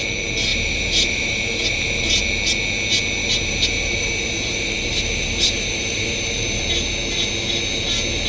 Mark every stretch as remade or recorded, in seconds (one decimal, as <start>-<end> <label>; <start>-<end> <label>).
0.0-0.5 recorded; 0.5-2.2 remade; 2.2-3.2 recorded; 3.2-6.6 remade; 6.6-8.3 recorded